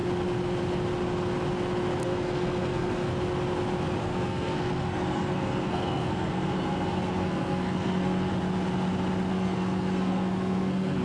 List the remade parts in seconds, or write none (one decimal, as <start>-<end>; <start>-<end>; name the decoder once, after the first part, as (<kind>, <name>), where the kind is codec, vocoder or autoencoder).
2.0-3.1 (codec, SNAC); 4.0-8.3; 9.3-11.0